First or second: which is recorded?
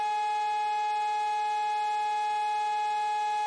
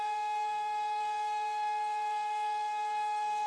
first